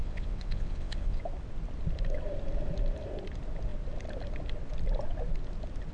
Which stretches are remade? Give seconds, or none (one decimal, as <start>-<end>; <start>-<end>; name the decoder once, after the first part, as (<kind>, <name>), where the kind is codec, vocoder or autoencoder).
0.0-1.2 (vocoder, WaveNeXt)